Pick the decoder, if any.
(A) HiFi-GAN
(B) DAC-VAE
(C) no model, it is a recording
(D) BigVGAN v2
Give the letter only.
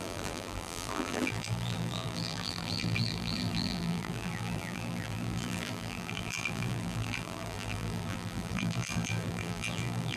D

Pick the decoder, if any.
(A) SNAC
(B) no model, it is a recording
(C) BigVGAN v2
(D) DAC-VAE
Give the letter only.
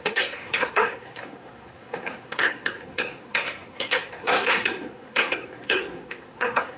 A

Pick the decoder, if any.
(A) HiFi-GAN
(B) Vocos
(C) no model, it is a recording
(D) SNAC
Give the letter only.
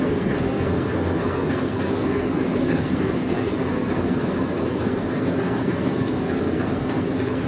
D